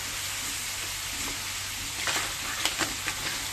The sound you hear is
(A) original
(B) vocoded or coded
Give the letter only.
A